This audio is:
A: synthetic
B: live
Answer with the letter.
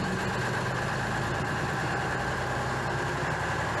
B